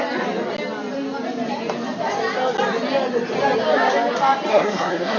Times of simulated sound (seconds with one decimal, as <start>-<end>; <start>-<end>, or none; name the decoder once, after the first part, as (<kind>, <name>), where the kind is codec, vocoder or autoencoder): 4.5-5.2 (codec, SNAC)